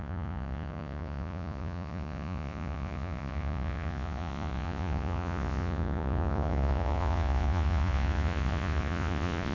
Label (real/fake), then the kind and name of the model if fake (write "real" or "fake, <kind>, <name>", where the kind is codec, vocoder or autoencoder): fake, vocoder, Vocos